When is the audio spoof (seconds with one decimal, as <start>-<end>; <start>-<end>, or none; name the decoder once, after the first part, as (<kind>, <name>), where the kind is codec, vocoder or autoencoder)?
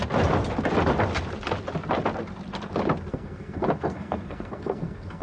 3.1-5.2 (codec, SNAC)